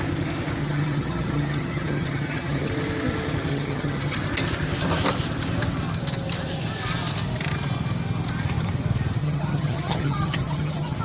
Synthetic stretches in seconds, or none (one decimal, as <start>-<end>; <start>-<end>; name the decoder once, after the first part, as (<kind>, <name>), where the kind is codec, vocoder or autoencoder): 0.6-2.7 (vocoder, HiFi-GAN); 3.5-4.2; 9.2-11.0